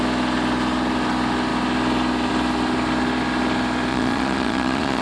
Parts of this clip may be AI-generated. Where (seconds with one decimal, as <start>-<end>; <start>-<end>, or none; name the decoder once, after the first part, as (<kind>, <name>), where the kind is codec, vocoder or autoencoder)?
3.9-5.0 (vocoder, Vocos)